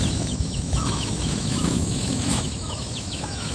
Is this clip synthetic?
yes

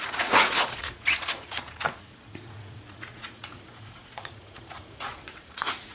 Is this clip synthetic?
yes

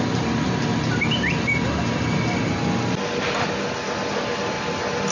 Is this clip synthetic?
no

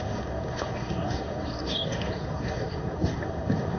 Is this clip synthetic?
yes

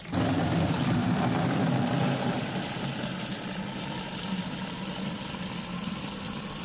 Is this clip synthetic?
no